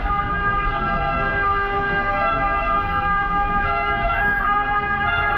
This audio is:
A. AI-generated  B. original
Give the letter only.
A